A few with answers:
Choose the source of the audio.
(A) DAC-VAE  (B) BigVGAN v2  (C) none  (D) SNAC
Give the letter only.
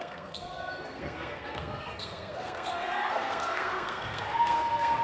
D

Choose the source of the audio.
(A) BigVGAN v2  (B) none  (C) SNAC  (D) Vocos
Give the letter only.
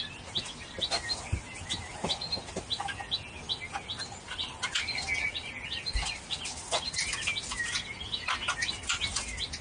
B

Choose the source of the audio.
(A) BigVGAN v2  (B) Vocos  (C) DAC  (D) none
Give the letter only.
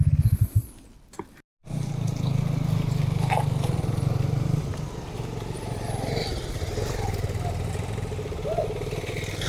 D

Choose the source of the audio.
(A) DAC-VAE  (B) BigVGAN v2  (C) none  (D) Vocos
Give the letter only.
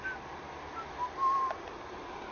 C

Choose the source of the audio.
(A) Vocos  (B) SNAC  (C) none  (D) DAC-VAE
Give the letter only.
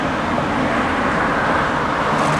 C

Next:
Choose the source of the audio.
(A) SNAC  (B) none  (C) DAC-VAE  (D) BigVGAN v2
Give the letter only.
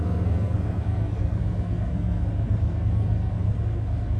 A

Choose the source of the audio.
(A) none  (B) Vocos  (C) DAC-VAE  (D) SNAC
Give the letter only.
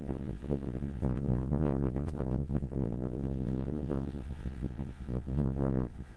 B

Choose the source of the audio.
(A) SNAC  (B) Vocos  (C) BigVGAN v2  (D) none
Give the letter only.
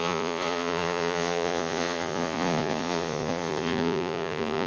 B